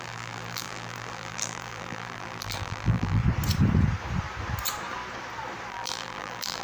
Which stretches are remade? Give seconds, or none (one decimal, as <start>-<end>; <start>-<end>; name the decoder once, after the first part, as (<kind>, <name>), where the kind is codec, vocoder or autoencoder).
0.0-3.2 (vocoder, BigVGAN v2); 5.7-6.6